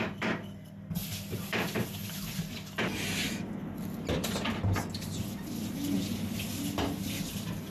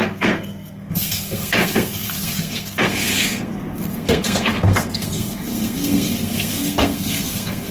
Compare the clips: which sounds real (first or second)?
first